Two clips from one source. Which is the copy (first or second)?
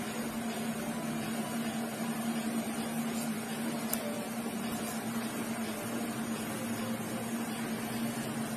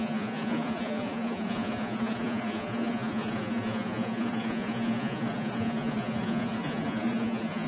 second